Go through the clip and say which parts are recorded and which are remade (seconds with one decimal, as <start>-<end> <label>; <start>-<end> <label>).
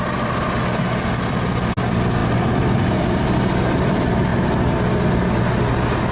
0.0-2.2 recorded; 2.2-3.6 remade; 3.6-6.1 recorded